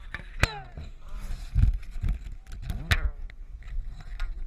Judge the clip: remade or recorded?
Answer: recorded